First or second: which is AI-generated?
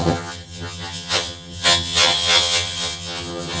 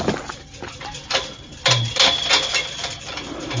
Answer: first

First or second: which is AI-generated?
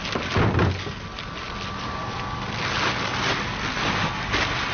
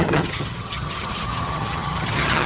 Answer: second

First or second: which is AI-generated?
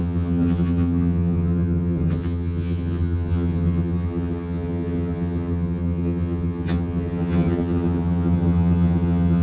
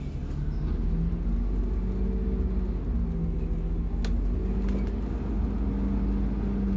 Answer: first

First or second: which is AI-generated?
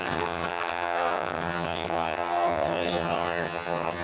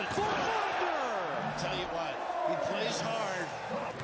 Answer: first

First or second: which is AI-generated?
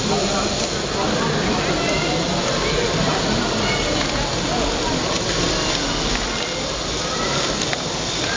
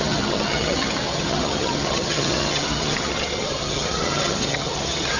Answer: second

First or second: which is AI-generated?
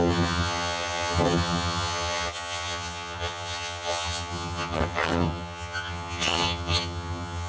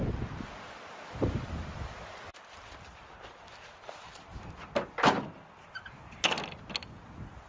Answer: first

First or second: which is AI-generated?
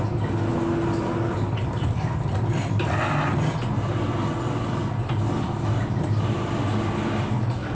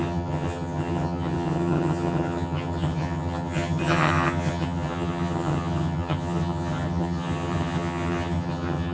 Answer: second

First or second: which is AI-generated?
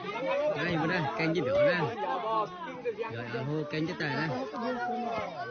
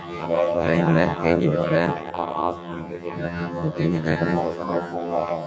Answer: second